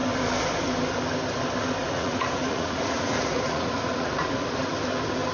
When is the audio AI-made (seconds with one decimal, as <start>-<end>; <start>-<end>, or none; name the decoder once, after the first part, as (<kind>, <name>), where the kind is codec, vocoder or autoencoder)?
1.8-4.7 (vocoder, Vocos)